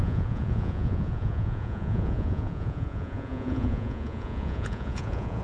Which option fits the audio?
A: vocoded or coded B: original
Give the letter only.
A